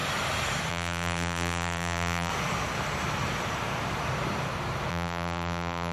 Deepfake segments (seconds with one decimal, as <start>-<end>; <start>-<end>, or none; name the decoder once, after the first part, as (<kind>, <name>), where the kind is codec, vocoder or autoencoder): 0.7-2.3 (vocoder, BigVGAN v2); 4.9-5.9